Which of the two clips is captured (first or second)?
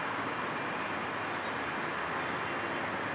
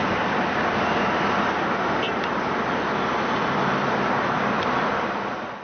first